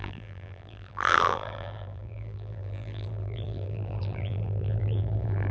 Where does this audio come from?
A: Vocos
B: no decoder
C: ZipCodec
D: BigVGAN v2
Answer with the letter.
D